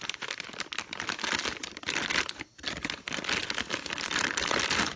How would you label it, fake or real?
real